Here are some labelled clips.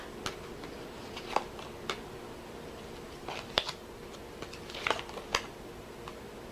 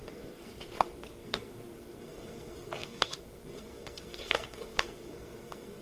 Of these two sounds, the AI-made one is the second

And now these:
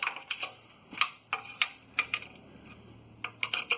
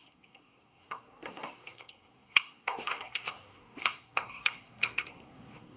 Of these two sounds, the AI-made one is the second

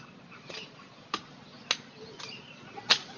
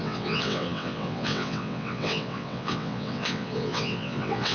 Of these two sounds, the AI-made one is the second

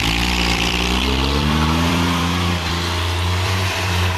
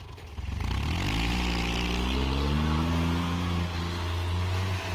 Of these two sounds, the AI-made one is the first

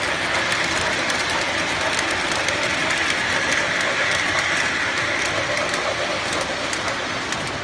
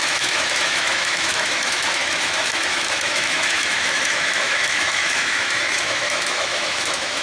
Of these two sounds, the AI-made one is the second